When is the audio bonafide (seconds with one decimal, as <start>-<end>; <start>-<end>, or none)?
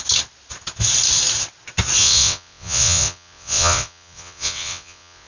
0.0-2.0